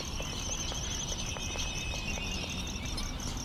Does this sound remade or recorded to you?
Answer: recorded